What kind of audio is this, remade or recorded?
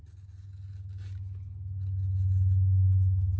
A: recorded